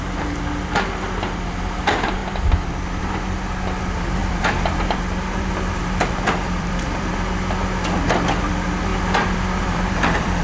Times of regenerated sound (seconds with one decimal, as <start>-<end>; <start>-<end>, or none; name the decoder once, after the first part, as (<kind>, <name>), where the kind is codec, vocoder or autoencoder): 2.2-3.0 (vocoder, BigVGAN v2); 4.2-7.1; 8.9-10.4